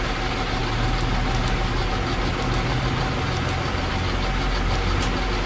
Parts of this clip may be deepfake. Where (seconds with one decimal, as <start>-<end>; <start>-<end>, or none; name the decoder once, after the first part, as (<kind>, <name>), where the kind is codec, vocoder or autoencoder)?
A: none